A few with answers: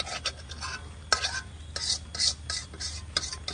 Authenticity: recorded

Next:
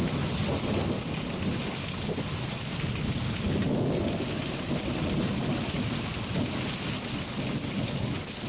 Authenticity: recorded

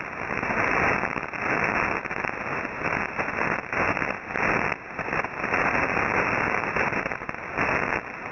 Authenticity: recorded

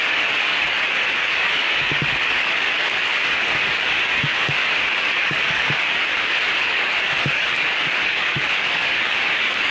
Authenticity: remade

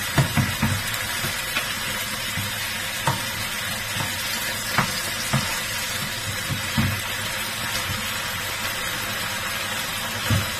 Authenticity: recorded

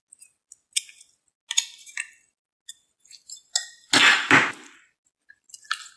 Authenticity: recorded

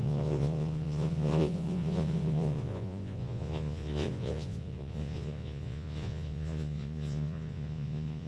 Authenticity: remade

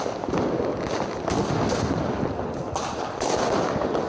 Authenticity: recorded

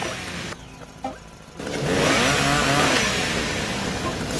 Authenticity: recorded